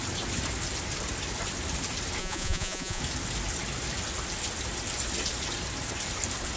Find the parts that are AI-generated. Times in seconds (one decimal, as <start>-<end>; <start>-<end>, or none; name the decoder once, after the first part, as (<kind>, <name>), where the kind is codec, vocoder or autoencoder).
2.2-3.0 (vocoder, Vocos)